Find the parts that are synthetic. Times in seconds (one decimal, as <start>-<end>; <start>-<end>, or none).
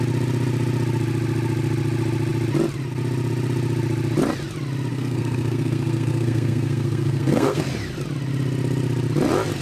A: 4.9-7.7